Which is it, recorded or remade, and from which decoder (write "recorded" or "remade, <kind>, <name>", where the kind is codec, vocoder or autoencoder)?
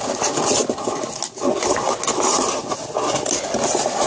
recorded